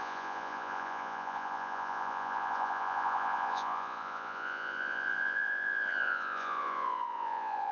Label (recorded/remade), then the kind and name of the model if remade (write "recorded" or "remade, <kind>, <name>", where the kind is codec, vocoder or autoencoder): remade, vocoder, Vocos